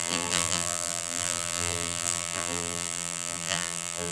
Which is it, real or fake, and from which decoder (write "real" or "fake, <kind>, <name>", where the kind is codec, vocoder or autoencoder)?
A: fake, vocoder, BigVGAN v2